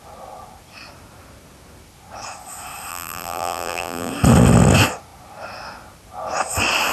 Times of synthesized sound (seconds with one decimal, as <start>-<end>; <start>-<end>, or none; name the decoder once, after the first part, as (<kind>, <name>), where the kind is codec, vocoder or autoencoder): 2.9-4.1 (vocoder, BigVGAN v2)